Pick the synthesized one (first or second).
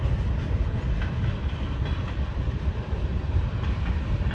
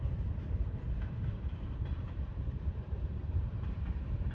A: second